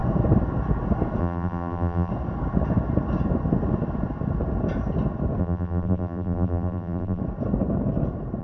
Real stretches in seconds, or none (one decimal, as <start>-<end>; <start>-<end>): 0.0-1.2; 2.1-5.4; 7.2-8.4

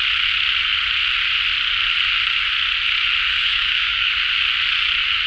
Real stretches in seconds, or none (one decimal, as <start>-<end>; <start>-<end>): 0.0-3.3; 4.1-5.3

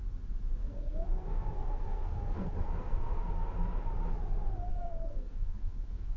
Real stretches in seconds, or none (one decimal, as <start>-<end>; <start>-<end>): 0.0-0.6; 3.3-4.7

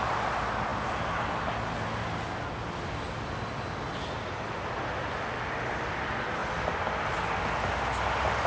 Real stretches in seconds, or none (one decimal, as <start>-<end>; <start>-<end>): 0.0-8.5

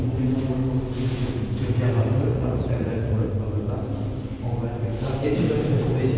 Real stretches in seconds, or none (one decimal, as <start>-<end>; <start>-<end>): 0.0-2.3; 3.3-6.2